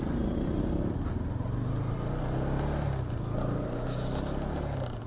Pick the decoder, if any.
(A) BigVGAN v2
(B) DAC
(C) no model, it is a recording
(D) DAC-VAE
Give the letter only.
C